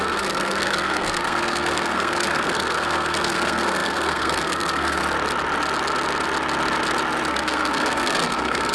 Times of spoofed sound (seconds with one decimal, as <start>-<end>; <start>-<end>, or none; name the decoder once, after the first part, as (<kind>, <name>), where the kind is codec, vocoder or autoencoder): 0.0-5.0 (codec, SNAC); 7.3-8.7